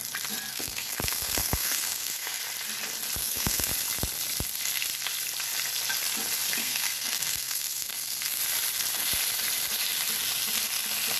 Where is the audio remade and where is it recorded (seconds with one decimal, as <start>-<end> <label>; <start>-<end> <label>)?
0.0-0.5 recorded; 0.5-2.4 remade; 2.4-3.2 recorded; 3.2-3.7 remade; 3.7-6.6 recorded; 6.6-8.4 remade; 8.4-11.2 recorded